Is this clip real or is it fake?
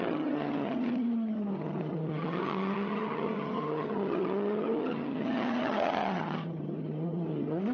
fake